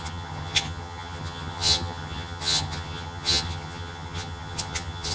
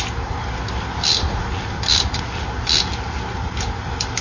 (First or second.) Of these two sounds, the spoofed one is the first